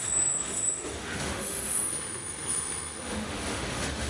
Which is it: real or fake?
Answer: fake